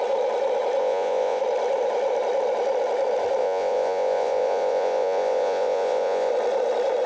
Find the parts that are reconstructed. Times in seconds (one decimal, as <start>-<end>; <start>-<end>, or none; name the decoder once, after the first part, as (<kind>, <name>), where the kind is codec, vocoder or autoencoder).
0.8-1.4 (vocoder, Vocos); 3.4-6.3